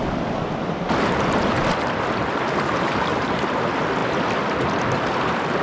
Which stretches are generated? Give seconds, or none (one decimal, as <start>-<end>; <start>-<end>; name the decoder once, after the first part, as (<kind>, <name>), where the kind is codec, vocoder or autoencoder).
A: 3.1-3.6 (vocoder, BigVGAN v2)